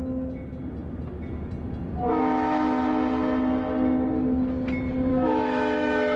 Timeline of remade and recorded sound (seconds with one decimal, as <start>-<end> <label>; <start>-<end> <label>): 0.0-5.1 recorded; 5.1-6.2 remade